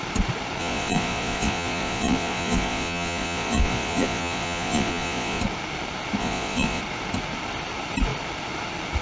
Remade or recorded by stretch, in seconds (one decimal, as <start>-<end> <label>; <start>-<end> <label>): 0.0-0.6 recorded; 0.6-5.4 remade; 5.4-6.2 recorded; 6.2-6.8 remade; 6.8-9.0 recorded